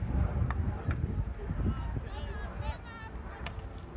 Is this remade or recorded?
recorded